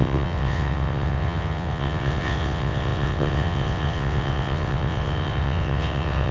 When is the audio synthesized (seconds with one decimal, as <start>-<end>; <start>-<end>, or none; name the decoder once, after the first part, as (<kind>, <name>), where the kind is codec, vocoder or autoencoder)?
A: 0.0-6.3 (vocoder, WaveNeXt)